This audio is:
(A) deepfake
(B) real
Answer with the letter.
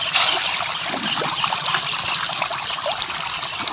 B